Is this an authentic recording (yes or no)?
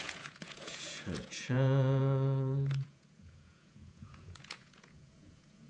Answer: no